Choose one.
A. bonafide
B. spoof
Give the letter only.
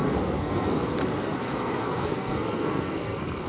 B